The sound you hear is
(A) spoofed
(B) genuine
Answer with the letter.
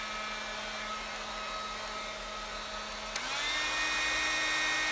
B